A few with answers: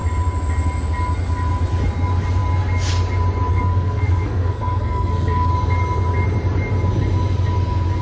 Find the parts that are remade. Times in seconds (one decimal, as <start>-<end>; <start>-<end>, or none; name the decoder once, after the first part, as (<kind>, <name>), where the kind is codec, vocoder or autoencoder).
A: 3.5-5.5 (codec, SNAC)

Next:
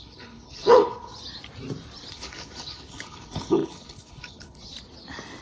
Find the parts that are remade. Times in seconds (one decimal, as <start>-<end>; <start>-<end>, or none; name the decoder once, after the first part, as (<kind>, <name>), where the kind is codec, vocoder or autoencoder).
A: 0.0-1.1 (codec, HILCodec); 2.1-4.6

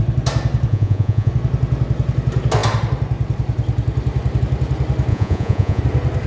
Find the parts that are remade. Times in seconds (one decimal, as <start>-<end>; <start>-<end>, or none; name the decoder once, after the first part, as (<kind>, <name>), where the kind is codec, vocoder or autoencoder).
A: 0.7-1.3 (vocoder, Vocos); 5.1-5.8

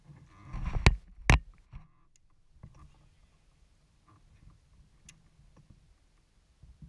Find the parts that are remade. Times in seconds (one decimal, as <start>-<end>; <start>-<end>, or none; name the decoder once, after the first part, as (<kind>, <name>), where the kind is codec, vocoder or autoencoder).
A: none